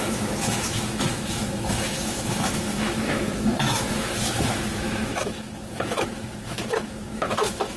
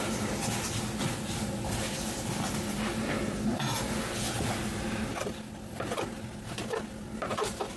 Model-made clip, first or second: first